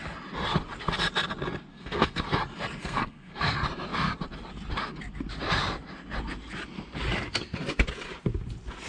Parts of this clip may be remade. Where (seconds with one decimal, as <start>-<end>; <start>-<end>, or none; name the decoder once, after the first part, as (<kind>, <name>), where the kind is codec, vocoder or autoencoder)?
1.7-2.2 (codec, SNAC); 2.8-3.4